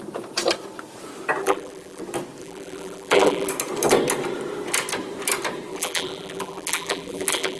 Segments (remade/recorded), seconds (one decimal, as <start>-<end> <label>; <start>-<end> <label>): 0.0-1.4 recorded; 1.4-2.0 remade; 2.0-2.4 recorded; 2.4-3.5 remade; 3.5-5.7 recorded; 5.7-7.6 remade